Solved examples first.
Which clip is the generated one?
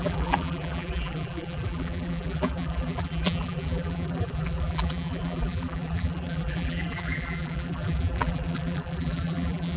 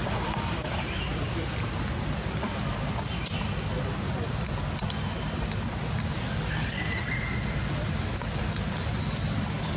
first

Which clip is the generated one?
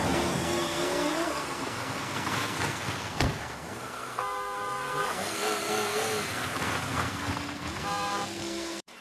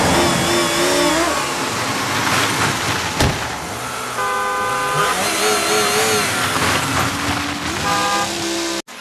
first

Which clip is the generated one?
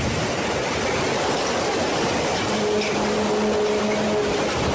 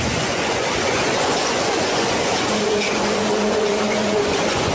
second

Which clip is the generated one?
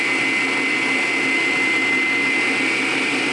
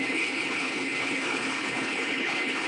second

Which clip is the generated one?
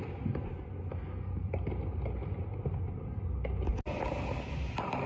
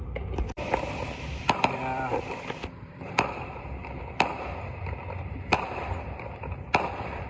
second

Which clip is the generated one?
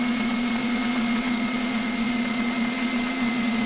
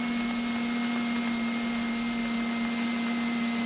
first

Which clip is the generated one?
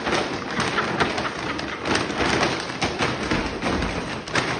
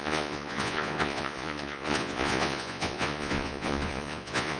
second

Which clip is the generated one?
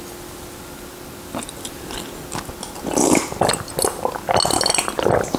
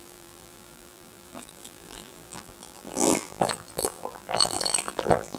second